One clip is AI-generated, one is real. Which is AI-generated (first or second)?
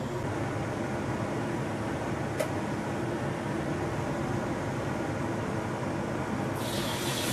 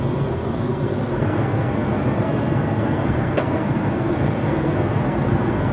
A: second